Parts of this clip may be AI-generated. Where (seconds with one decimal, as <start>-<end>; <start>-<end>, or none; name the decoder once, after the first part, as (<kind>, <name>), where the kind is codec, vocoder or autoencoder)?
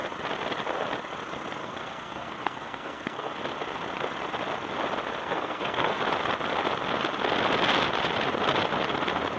1.6-3.3 (codec, SNAC); 5.2-6.0